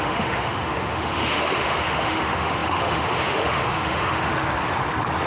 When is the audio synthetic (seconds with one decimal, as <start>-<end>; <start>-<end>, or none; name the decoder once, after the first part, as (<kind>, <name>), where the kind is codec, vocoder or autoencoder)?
0.0-4.3 (autoencoder, DAC-VAE)